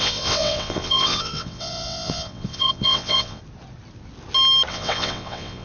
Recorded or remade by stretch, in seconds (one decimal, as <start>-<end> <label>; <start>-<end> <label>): 0.0-3.4 remade; 3.4-4.7 recorded; 4.7-5.6 remade